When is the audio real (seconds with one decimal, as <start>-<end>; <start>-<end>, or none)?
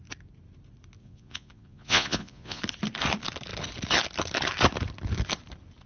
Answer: 0.0-1.0; 2.6-5.9